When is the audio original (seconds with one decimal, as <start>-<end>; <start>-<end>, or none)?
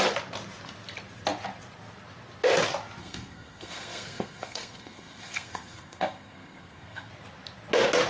0.0-3.0; 7.1-8.1